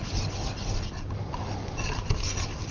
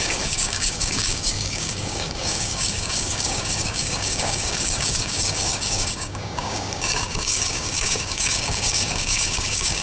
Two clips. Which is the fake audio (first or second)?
second